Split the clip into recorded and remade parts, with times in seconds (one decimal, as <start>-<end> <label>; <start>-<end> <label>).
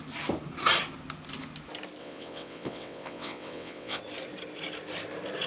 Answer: 0.0-2.0 recorded; 2.0-4.0 remade; 4.0-5.5 recorded